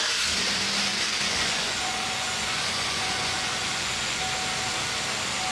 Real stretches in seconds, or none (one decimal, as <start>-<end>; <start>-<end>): 0.0-0.9; 4.2-5.5